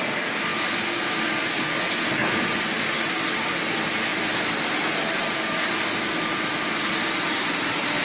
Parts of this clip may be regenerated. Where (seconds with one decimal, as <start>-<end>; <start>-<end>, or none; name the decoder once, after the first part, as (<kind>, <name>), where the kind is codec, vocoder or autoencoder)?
none